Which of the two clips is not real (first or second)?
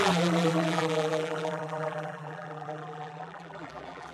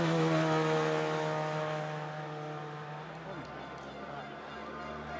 first